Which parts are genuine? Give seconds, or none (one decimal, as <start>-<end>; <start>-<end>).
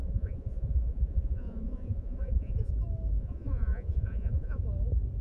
2.7-3.2; 4.6-5.2